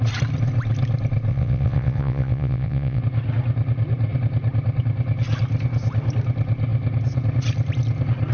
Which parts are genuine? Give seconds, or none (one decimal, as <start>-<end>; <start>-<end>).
0.0-1.3; 3.0-8.3